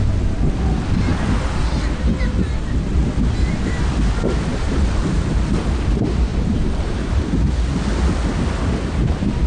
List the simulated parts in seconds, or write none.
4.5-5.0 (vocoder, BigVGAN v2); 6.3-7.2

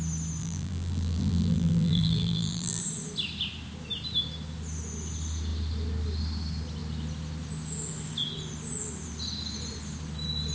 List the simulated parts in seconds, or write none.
0.4-2.8 (vocoder, BigVGAN v2)

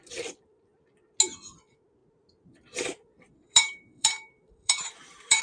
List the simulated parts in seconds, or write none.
2.0-5.4 (vocoder, BigVGAN v2)

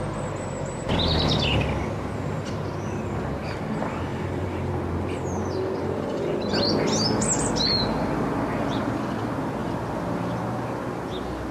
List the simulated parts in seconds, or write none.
4.1-4.7 (vocoder, BigVGAN v2); 5.8-6.4